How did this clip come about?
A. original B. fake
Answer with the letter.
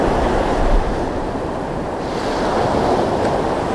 A